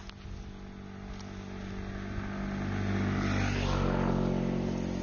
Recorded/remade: recorded